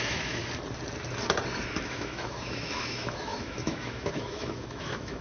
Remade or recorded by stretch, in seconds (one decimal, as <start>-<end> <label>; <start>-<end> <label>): 0.0-0.4 remade; 0.4-1.8 recorded; 1.8-5.2 remade